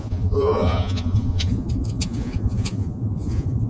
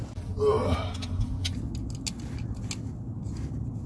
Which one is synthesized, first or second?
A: first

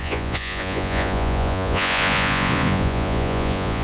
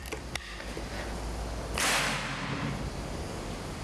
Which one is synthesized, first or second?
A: first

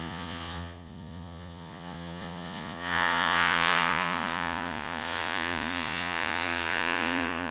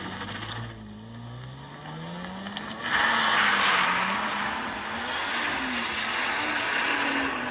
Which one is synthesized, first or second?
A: first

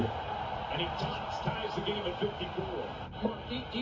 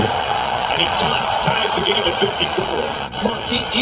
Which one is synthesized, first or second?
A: second